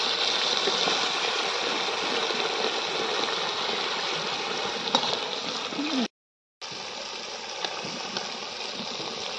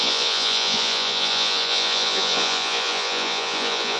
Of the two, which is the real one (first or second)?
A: first